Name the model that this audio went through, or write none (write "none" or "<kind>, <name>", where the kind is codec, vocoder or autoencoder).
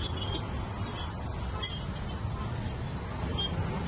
none